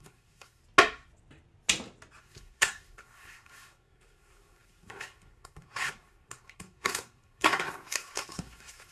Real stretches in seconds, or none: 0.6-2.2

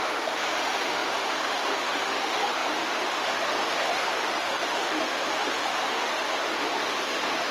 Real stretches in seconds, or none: none

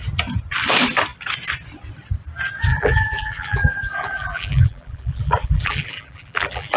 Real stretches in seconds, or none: 0.0-2.7

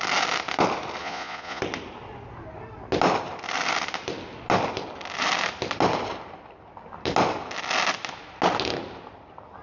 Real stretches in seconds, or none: 0.0-1.0; 1.6-9.6

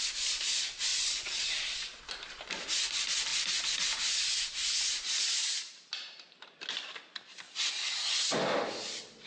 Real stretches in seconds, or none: 0.0-0.9; 2.0-9.3